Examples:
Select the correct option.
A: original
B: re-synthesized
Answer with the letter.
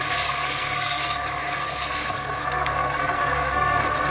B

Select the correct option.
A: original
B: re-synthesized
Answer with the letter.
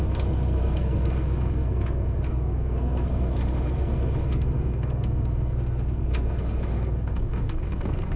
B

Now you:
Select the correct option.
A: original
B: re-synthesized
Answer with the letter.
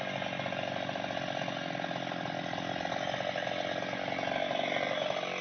A